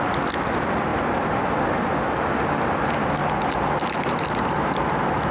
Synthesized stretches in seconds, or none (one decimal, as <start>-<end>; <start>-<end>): none